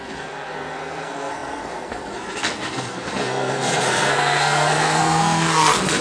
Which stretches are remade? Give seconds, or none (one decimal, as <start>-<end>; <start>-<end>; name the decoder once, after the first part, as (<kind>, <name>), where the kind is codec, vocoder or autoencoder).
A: 0.0-6.0 (codec, SNAC)